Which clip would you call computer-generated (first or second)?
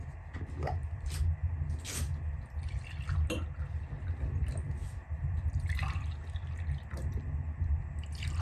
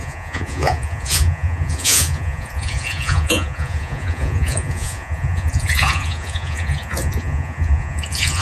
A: second